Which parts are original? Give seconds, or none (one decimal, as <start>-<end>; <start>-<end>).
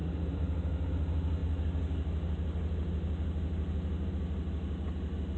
0.0-5.4